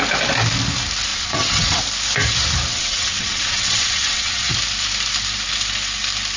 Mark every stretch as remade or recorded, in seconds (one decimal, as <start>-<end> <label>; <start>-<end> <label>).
0.0-1.1 recorded; 1.1-1.8 remade; 1.8-2.7 recorded; 2.7-4.5 remade; 4.5-6.4 recorded

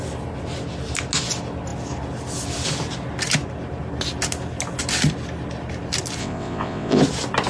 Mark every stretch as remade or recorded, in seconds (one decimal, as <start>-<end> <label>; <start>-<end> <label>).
0.0-6.2 recorded; 6.2-7.0 remade; 7.0-7.5 recorded

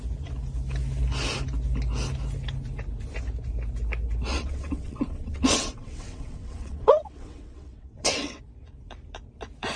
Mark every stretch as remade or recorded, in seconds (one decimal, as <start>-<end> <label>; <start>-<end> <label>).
0.0-4.3 recorded; 4.3-8.4 remade; 8.4-9.8 recorded

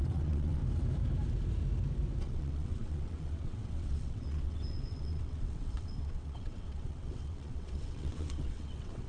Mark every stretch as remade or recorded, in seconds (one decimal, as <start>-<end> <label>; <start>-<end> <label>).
0.0-0.6 remade; 0.6-2.2 recorded; 2.2-9.1 remade

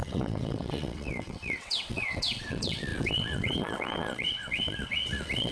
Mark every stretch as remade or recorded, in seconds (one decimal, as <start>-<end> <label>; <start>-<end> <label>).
0.0-5.5 remade

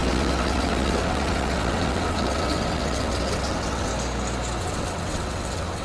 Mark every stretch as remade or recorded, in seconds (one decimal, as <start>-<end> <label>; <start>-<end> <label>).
0.0-3.9 remade; 3.9-4.6 recorded; 4.6-5.8 remade

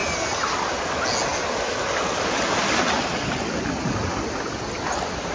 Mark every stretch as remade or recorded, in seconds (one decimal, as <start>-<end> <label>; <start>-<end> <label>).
0.0-5.3 recorded